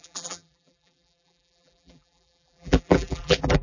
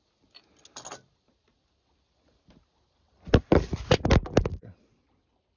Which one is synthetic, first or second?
first